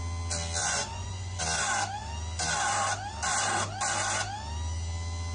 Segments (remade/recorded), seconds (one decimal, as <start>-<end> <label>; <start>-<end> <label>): 0.0-0.6 recorded; 0.6-1.4 remade; 1.4-5.3 recorded